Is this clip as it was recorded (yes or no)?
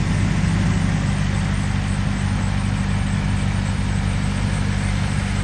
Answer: yes